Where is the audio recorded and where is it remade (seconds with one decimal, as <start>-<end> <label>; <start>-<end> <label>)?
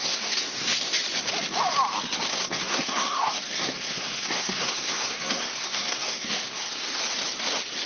0.0-0.9 remade; 0.9-2.3 recorded; 2.3-7.0 remade; 7.0-7.9 recorded